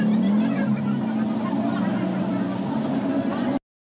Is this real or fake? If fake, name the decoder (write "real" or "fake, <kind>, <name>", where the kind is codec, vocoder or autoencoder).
real